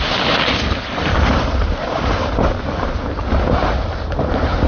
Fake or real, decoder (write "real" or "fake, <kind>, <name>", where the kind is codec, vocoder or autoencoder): real